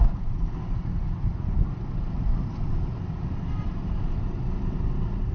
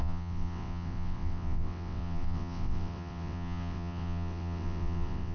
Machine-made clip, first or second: second